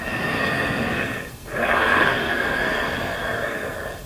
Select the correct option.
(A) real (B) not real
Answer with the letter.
B